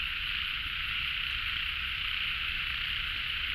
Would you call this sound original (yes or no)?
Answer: yes